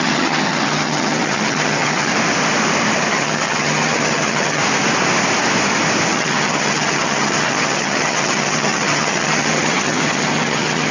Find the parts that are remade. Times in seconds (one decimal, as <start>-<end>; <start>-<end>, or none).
0.0-2.1; 3.1-4.6; 6.1-10.9